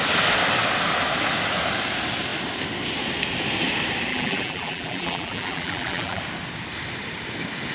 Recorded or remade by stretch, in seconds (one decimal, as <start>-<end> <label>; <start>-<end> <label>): 0.0-4.1 recorded; 4.1-6.2 remade; 6.2-7.7 recorded